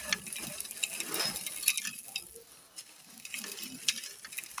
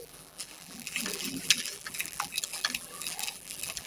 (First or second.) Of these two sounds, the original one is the first